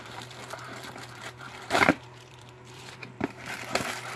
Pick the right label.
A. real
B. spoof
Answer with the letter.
B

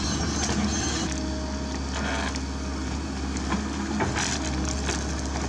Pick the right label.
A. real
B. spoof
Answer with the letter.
A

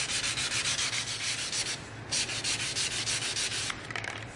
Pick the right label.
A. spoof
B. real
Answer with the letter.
B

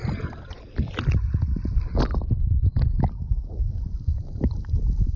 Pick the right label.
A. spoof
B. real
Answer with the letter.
B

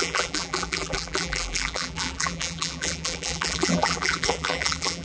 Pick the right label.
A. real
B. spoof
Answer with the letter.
B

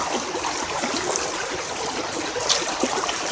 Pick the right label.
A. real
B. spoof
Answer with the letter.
A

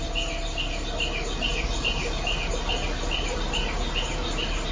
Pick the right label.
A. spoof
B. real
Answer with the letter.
B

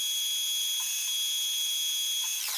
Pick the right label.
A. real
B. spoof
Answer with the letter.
A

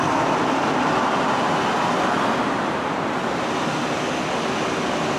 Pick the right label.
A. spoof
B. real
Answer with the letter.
B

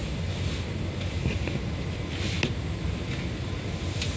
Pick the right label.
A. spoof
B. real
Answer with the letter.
B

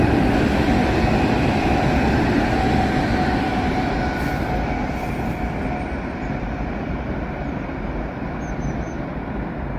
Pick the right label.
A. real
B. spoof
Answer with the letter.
A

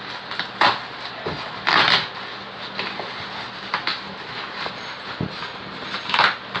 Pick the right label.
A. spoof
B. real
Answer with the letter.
B